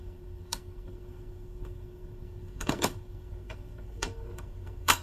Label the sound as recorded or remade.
remade